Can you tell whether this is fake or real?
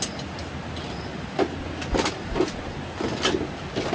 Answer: real